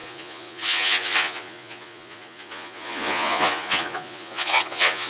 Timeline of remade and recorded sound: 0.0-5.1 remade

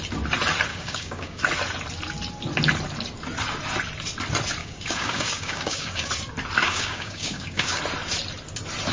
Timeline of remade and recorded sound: 0.0-0.7 recorded; 0.7-1.4 remade; 1.4-4.6 recorded; 4.6-6.1 remade; 6.1-6.6 recorded; 6.6-7.8 remade; 7.8-8.9 recorded

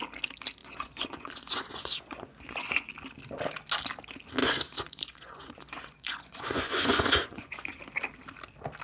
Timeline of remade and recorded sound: 0.0-0.6 recorded; 0.6-2.9 remade; 2.9-4.4 recorded; 4.4-7.8 remade; 7.8-8.8 recorded

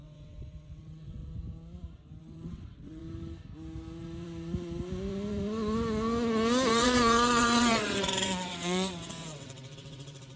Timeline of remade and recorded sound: 0.0-1.3 remade; 1.3-2.2 recorded; 2.2-3.0 remade; 3.0-6.7 recorded; 6.7-10.4 remade

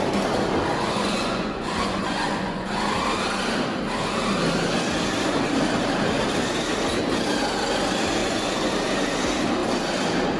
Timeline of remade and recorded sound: 0.0-0.7 recorded; 0.7-3.0 remade; 3.0-8.2 recorded; 8.2-8.7 remade; 8.7-10.4 recorded